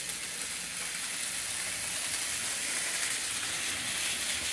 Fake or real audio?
real